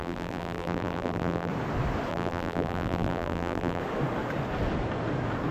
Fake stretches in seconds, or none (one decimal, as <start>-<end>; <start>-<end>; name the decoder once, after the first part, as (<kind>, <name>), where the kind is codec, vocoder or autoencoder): 0.0-1.5 (vocoder, BigVGAN v2); 2.1-3.8